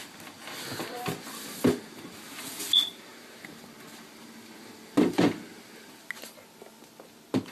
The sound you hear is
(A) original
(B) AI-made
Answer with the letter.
A